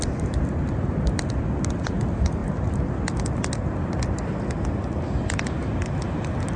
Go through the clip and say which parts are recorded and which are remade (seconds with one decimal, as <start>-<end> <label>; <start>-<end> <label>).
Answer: 0.0-6.6 recorded